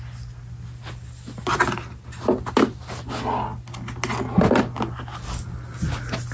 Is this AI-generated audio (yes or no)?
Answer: no